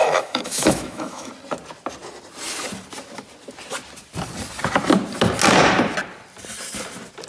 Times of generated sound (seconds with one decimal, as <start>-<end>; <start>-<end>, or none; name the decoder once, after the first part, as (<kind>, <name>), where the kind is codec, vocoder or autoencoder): 0.0-1.3 (autoencoder, DAC-VAE)